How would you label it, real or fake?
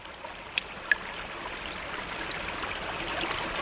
real